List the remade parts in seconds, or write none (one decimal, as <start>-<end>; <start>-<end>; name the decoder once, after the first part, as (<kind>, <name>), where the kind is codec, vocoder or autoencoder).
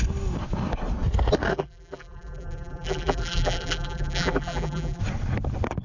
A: 1.5-5.0 (vocoder, BigVGAN v2)